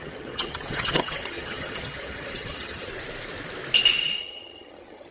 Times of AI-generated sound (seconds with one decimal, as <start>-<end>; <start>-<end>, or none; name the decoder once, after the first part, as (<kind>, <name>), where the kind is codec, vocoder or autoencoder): 0.0-2.9 (vocoder, HiFi-GAN); 4.2-5.1